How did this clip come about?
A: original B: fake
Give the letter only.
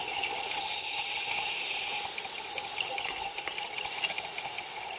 A